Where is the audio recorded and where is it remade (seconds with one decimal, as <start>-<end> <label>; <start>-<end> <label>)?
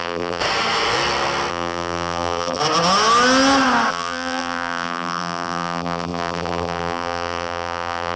0.0-0.4 remade; 0.4-1.5 recorded; 1.5-2.6 remade; 2.6-3.9 recorded; 3.9-8.2 remade